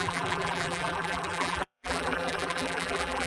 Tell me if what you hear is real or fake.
fake